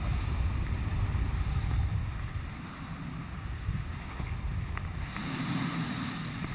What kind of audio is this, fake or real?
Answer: real